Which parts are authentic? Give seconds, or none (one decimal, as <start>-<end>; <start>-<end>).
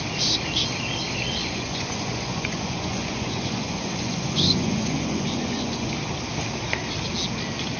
0.0-1.4; 5.9-7.8